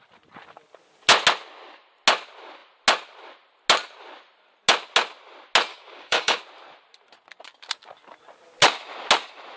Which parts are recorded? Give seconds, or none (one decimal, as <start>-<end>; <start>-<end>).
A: 0.0-5.7; 6.4-9.6